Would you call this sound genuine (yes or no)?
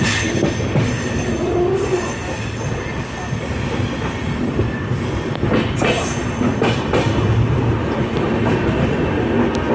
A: yes